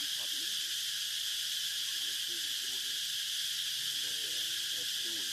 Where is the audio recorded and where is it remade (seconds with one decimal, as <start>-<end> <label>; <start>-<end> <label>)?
0.0-0.8 remade; 0.8-5.3 recorded